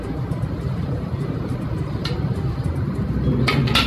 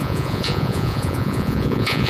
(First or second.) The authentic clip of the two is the first